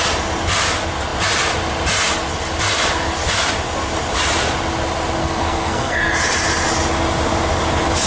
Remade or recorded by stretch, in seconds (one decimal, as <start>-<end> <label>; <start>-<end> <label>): 0.0-5.2 recorded; 5.2-6.1 remade; 6.1-8.1 recorded